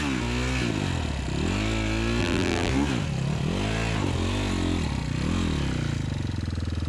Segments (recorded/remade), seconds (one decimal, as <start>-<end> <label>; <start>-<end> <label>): 0.0-2.2 recorded; 2.2-2.7 remade; 2.7-6.9 recorded